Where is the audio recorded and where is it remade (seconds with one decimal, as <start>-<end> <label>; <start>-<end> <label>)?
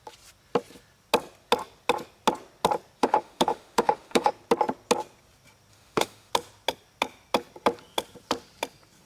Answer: 0.0-3.0 recorded; 3.0-4.3 remade; 4.3-5.7 recorded; 5.7-6.3 remade; 6.3-9.1 recorded